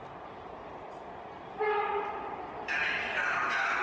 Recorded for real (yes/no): yes